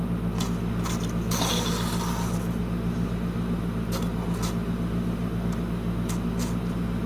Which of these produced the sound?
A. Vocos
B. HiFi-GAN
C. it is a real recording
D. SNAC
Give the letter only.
C